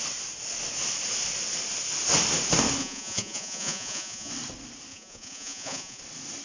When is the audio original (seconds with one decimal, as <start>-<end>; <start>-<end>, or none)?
0.0-2.8; 4.3-4.9; 6.0-6.4